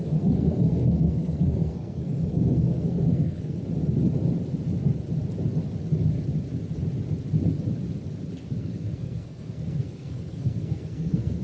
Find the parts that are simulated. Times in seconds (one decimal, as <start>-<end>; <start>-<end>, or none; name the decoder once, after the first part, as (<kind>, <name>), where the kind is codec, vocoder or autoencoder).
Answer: 0.0-3.6 (codec, SNAC); 8.6-11.4